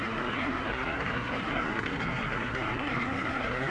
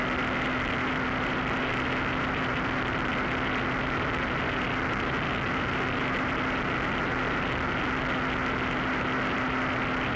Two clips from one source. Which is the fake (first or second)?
first